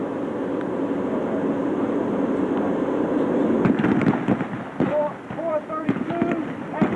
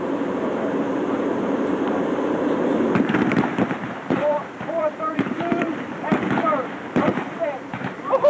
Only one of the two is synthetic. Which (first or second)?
second